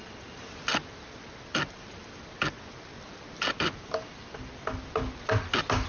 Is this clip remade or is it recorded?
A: recorded